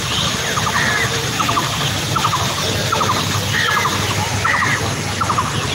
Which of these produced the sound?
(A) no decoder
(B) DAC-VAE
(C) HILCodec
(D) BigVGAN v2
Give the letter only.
A